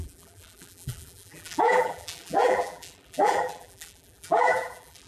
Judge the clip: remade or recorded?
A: remade